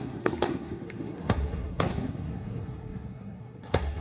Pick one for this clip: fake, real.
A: fake